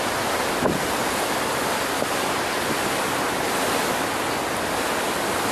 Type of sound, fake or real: real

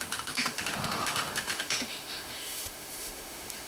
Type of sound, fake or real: fake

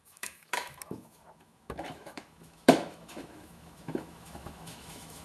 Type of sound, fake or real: fake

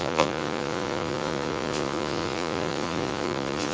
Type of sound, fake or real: fake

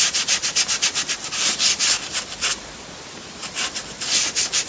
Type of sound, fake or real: real